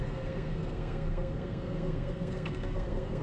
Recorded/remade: remade